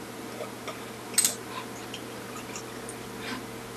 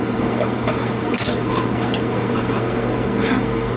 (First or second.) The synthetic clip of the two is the second